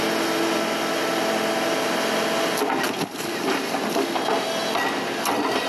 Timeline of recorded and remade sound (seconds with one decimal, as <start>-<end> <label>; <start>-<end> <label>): 0.0-3.1 recorded; 3.1-3.7 remade; 3.7-5.7 recorded